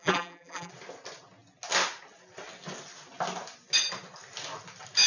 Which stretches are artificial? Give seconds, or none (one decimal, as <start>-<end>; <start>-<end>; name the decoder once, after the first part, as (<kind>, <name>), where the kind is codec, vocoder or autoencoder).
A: 0.0-0.7 (vocoder, BigVGAN v2)